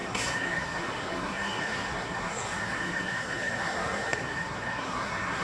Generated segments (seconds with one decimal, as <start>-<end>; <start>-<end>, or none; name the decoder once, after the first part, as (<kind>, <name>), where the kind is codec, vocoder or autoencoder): 0.0-5.4 (codec, SNAC)